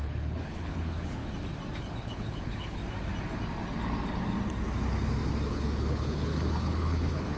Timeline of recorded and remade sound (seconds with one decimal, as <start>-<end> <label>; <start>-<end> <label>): 0.0-1.2 remade; 1.2-1.8 recorded; 1.8-2.8 remade; 2.8-5.5 recorded; 5.5-7.4 remade